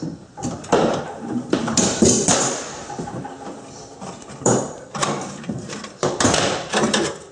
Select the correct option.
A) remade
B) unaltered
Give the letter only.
A